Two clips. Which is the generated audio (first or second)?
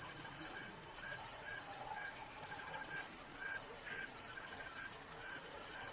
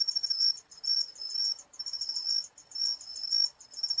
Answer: first